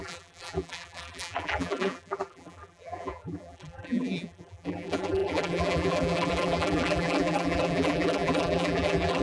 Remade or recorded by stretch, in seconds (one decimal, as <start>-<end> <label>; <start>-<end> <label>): 0.0-9.2 remade